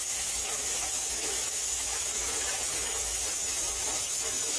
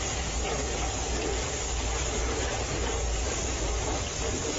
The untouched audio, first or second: second